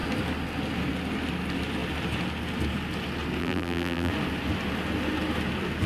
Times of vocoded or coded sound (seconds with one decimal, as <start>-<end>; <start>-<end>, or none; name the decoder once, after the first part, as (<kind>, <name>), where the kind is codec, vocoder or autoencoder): 3.4-4.1 (vocoder, BigVGAN v2)